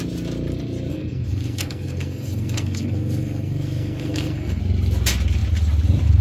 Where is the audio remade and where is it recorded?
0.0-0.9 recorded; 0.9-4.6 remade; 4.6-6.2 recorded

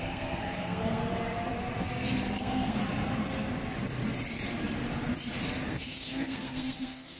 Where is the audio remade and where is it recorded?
0.0-1.0 remade; 1.0-2.4 recorded; 2.4-2.8 remade; 2.8-5.7 recorded; 5.7-7.2 remade

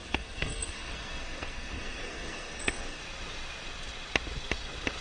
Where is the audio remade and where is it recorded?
0.0-3.0 remade; 3.0-5.0 recorded

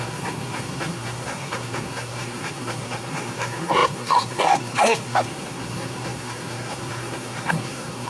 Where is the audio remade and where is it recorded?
0.0-8.1 remade